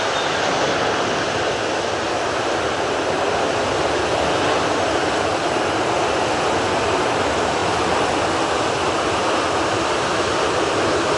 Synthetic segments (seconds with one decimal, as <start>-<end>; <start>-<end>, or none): none